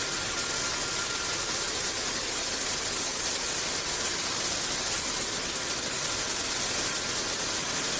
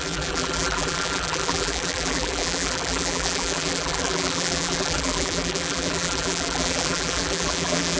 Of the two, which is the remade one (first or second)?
second